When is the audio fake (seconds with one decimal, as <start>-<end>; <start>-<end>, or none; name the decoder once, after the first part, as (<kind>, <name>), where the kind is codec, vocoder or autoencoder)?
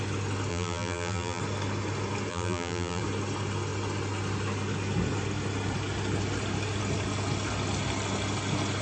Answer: 0.5-1.4 (vocoder, BigVGAN v2); 2.3-3.0